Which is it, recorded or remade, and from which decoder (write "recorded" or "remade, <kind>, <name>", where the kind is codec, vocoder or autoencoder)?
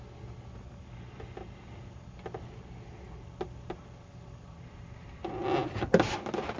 recorded